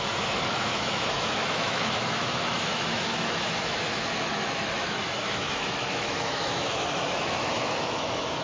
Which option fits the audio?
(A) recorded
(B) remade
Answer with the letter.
B